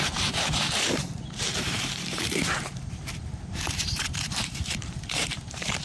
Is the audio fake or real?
fake